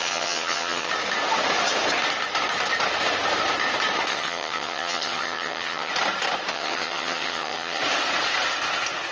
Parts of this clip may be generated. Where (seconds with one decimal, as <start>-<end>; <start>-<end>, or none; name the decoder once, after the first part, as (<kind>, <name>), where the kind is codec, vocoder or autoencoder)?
0.0-0.9 (vocoder, HiFi-GAN); 4.1-5.9; 6.5-7.8